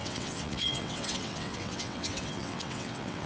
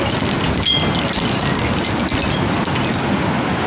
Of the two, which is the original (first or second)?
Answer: second